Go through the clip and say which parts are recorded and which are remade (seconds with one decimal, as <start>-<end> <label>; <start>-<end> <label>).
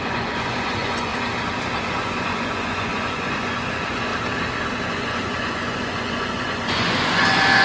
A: 0.0-1.1 remade; 1.1-1.8 recorded; 1.8-4.1 remade; 4.1-4.9 recorded; 4.9-7.6 remade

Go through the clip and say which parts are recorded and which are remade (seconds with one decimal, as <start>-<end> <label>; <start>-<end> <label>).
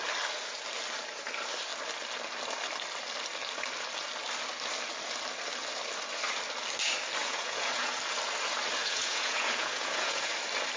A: 0.0-7.2 recorded; 7.2-7.9 remade; 7.9-8.8 recorded; 8.8-10.3 remade; 10.3-10.8 recorded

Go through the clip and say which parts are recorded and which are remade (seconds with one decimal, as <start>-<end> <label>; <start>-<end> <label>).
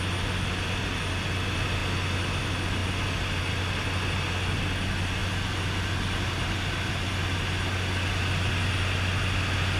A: 0.0-9.8 recorded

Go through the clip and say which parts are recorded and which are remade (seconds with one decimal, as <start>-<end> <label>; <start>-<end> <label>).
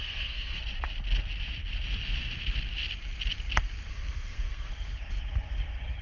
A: 0.0-0.6 remade; 0.6-3.9 recorded; 3.9-4.7 remade; 4.7-6.0 recorded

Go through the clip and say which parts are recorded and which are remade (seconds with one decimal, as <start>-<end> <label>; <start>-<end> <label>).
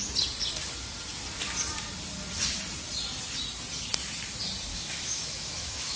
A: 0.0-4.7 recorded; 4.7-6.0 remade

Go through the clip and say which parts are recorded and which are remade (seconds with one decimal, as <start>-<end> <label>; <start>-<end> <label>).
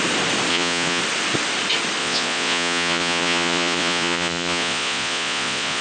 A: 0.0-0.5 recorded; 0.5-1.0 remade; 1.0-2.0 recorded; 2.0-5.8 remade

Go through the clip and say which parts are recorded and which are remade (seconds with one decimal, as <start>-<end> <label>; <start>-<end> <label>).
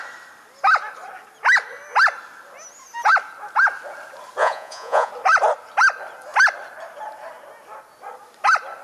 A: 0.0-4.4 recorded; 4.4-5.1 remade; 5.1-8.8 recorded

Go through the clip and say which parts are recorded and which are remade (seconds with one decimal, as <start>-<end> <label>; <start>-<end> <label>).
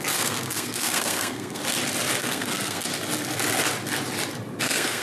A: 0.0-1.6 remade; 1.6-2.2 recorded; 2.2-2.9 remade; 2.9-4.6 recorded; 4.6-5.0 remade